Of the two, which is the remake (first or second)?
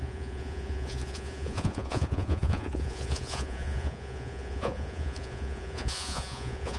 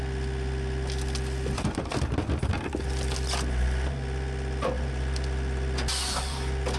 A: first